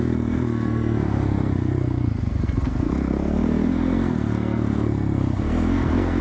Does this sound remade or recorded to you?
remade